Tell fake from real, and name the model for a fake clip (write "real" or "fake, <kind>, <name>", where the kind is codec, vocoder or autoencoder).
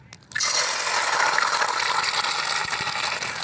real